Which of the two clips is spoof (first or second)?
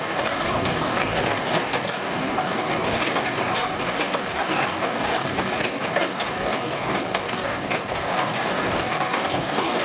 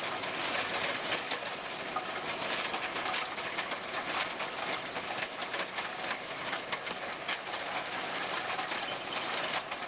first